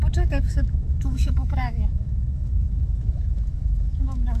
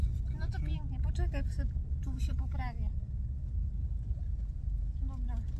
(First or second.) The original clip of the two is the second